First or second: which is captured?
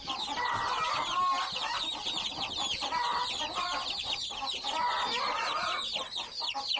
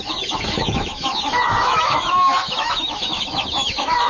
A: first